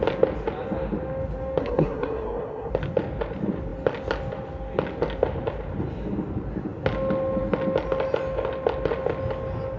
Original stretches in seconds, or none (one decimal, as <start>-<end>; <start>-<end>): 0.0-1.6; 2.7-9.8